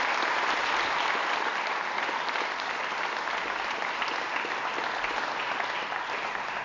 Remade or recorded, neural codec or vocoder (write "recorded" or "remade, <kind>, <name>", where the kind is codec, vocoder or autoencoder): recorded